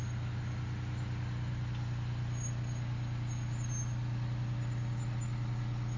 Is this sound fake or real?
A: real